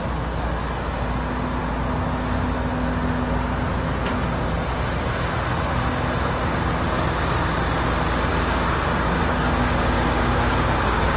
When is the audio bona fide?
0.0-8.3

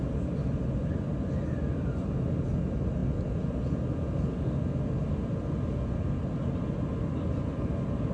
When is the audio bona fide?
0.0-8.1

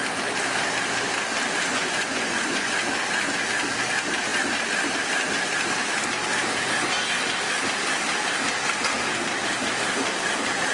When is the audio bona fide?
0.0-1.7; 2.7-10.7